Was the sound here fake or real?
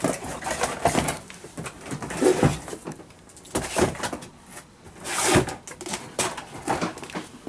real